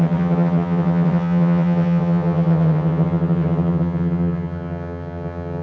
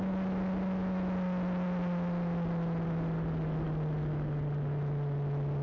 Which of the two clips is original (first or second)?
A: second